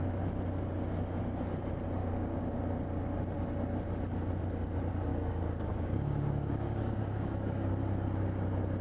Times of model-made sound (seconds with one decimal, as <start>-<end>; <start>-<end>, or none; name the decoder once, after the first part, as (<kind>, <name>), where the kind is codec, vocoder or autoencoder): 2.0-2.6 (codec, DAC); 5.1-7.7